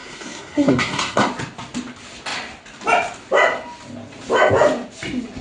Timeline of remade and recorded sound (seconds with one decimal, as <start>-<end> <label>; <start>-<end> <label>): 0.0-1.3 remade; 1.3-5.4 recorded